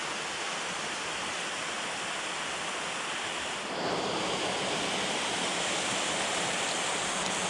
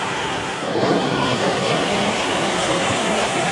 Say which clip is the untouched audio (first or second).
first